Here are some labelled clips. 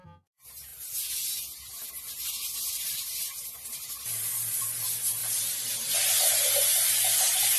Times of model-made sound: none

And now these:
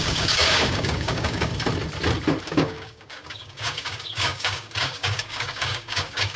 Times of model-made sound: 0.0-1.5 (codec, DAC); 2.4-6.4

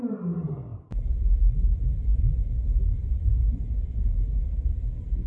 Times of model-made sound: none

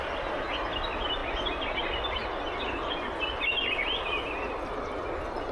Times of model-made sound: none

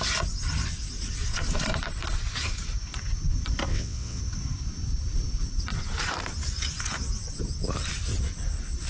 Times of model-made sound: 3.7-4.2 (vocoder, WaveNeXt)